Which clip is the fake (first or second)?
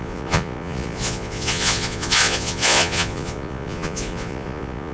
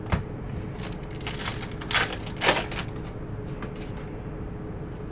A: first